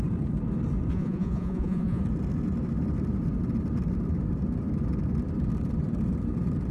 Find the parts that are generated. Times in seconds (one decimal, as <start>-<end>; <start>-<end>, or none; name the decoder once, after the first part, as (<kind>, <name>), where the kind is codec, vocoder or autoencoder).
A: 0.9-2.0 (vocoder, Vocos)